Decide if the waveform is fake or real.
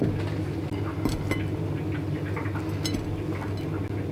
real